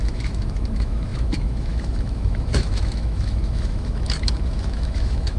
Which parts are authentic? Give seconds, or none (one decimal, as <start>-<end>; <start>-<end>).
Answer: none